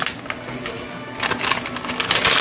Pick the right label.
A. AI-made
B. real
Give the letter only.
B